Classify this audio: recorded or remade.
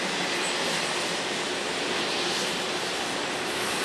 remade